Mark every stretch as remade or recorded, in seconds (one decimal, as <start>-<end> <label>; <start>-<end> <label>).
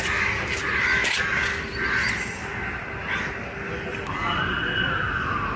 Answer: 0.0-5.6 recorded